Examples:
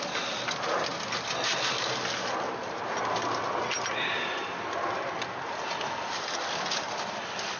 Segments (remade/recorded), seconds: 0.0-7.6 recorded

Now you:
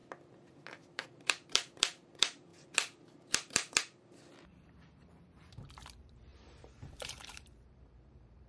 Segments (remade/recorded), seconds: 0.0-0.5 recorded; 0.5-8.5 remade

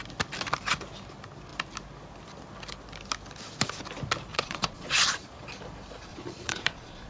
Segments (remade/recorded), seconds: 0.0-4.3 recorded; 4.3-5.4 remade; 5.4-6.1 recorded; 6.1-7.1 remade